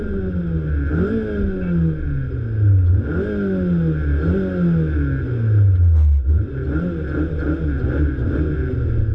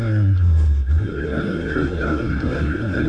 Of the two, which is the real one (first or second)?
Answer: first